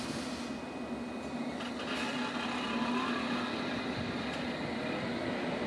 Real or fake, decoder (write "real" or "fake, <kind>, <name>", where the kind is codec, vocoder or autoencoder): real